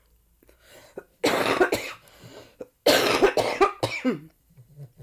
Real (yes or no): yes